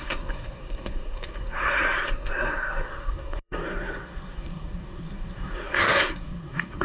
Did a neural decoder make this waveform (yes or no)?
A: yes